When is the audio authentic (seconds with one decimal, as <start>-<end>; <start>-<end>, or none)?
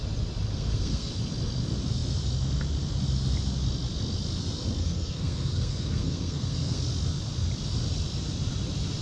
0.0-0.5; 1.1-4.8; 6.8-9.0